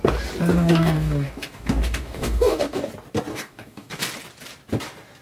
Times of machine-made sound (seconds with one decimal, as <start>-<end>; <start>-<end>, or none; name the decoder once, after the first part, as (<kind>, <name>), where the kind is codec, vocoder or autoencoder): 0.5-2.9 (codec, DAC); 3.3-4.0